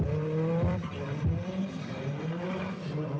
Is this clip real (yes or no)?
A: no